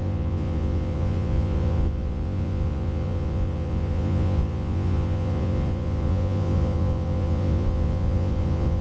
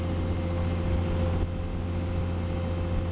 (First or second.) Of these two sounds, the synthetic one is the first